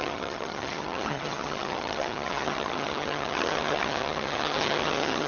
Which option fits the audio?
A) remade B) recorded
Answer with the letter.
A